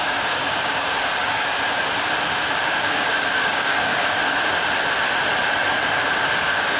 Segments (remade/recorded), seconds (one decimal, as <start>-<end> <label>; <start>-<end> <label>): 0.0-0.8 remade; 0.8-2.6 recorded; 2.6-4.2 remade; 4.2-6.3 recorded; 6.3-6.8 remade

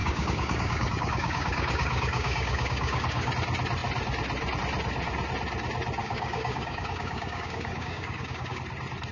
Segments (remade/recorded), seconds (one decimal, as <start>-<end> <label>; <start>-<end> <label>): 0.0-3.3 remade; 3.3-6.0 recorded; 6.0-8.6 remade; 8.6-9.1 recorded

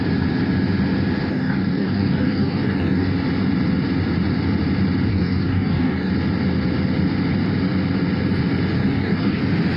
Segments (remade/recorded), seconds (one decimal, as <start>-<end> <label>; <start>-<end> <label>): 0.0-1.3 recorded; 1.3-3.1 remade; 3.1-5.1 recorded; 5.1-6.1 remade; 6.1-8.8 recorded; 8.8-9.4 remade; 9.4-9.8 recorded

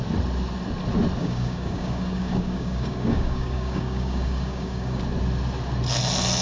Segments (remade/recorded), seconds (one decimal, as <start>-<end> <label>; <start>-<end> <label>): 0.0-1.2 recorded; 1.2-5.0 remade; 5.0-6.4 recorded

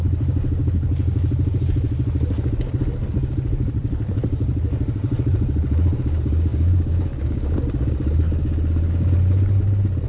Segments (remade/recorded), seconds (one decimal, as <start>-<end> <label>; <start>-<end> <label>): 0.0-6.5 recorded; 6.5-7.6 remade; 7.6-10.1 recorded

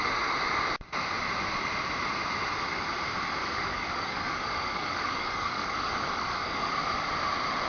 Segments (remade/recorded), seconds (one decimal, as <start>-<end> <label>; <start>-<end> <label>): 0.0-3.4 recorded; 3.4-6.7 remade; 6.7-7.7 recorded

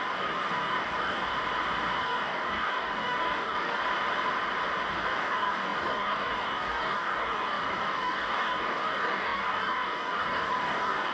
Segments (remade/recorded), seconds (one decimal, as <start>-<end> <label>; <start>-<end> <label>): 0.0-1.3 remade; 1.3-2.0 recorded; 2.0-3.8 remade; 3.8-4.9 recorded; 4.9-11.1 remade